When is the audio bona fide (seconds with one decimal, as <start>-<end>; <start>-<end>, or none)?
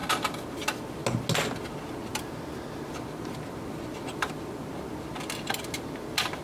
0.0-6.4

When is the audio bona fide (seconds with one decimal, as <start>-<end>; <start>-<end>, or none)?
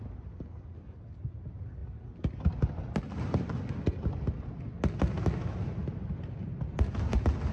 0.0-7.5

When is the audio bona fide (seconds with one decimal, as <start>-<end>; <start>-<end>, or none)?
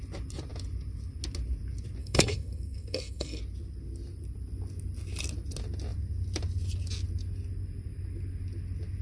0.0-2.0; 3.4-9.0